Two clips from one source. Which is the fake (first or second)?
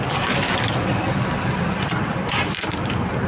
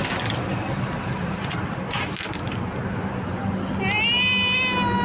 first